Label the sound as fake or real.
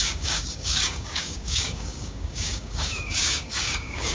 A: fake